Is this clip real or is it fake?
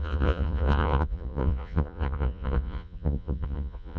fake